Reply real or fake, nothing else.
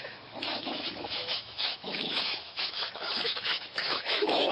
fake